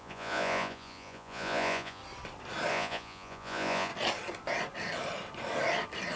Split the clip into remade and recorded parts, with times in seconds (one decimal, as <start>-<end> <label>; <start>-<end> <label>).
0.0-2.0 remade; 2.0-2.7 recorded; 2.7-3.9 remade; 3.9-6.2 recorded